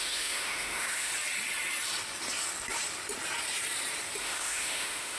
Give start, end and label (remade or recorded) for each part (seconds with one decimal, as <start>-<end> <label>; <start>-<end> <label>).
0.0-1.1 remade; 1.1-4.2 recorded; 4.2-5.2 remade